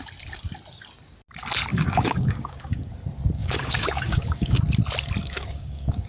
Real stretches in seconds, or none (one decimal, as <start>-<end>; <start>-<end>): 0.0-1.7; 2.9-3.4; 4.6-5.2